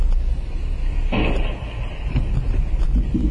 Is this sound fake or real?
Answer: real